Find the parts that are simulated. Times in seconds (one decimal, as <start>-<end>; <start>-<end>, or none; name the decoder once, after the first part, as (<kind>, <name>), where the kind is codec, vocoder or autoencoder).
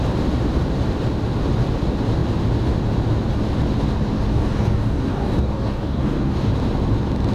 4.3-6.5 (codec, DAC)